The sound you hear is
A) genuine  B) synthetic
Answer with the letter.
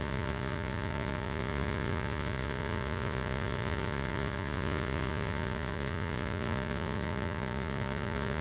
B